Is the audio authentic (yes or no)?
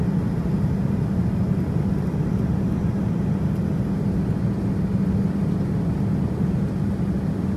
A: yes